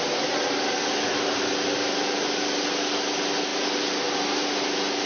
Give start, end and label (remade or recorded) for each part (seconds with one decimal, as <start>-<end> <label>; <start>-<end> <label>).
0.0-5.1 recorded